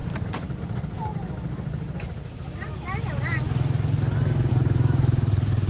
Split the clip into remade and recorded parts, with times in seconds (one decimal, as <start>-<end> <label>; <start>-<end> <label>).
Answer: 0.0-0.6 recorded; 0.6-1.1 remade; 1.1-4.5 recorded; 4.5-5.7 remade